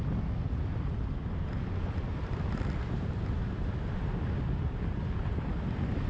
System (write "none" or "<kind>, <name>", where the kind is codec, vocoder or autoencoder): none